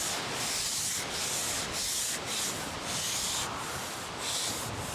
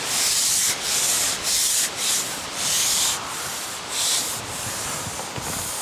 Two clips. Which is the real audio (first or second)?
first